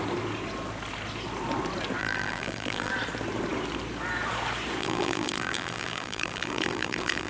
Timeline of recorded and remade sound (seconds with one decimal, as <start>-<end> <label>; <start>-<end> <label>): 0.0-2.0 recorded; 2.0-2.9 remade; 2.9-4.8 recorded; 4.8-7.3 remade

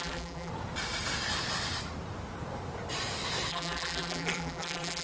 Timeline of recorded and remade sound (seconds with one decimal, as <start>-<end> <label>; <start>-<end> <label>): 0.0-0.5 remade; 0.5-3.5 recorded; 3.5-5.0 remade